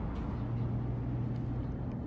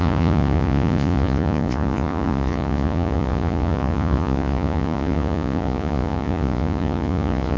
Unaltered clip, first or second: first